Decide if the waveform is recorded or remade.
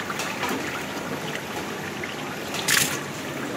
recorded